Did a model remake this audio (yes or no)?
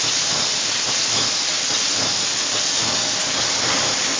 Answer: no